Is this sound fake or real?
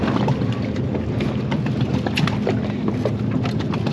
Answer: real